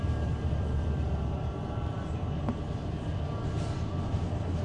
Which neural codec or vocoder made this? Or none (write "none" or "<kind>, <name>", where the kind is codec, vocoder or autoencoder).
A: none